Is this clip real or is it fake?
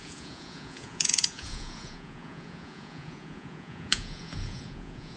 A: fake